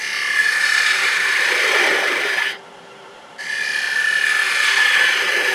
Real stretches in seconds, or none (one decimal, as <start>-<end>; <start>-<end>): 0.0-0.4; 1.5-1.9; 3.4-4.4; 5.0-5.5